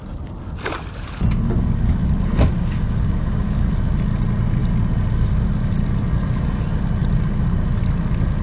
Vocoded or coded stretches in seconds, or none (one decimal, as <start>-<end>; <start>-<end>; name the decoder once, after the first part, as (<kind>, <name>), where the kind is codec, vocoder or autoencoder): 2.0-3.7 (codec, DAC)